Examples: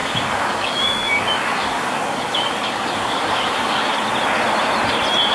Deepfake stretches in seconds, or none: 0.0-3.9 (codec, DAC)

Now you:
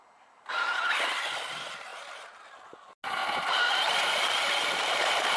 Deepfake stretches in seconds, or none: 3.2-5.0 (vocoder, BigVGAN v2)

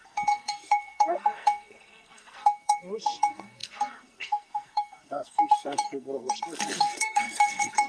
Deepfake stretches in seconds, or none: 0.0-7.9 (codec, SNAC)

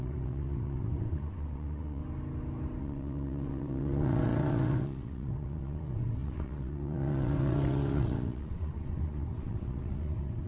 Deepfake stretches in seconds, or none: 0.0-2.0 (vocoder, WaveNeXt); 2.8-10.5

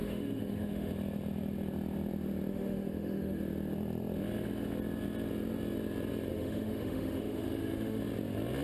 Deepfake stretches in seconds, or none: 0.0-0.9 (autoencoder, DAC-VAE); 2.5-3.4; 6.3-8.0

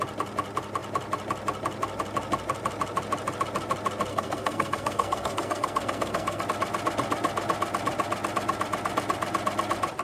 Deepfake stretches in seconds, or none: 4.1-6.4 (codec, SNAC)

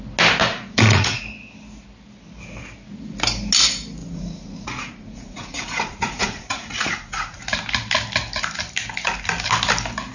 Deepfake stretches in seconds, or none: 0.5-1.2 (vocoder, Vocos); 4.0-7.4